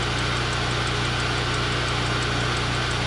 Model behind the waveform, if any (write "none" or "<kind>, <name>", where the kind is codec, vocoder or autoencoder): none